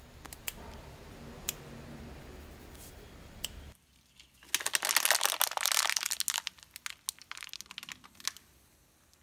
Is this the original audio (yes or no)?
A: yes